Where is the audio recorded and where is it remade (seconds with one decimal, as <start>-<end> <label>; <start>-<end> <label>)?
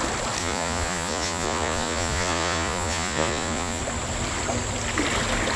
0.0-0.4 recorded; 0.4-3.8 remade; 3.8-5.6 recorded